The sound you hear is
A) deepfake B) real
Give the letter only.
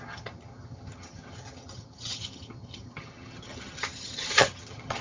A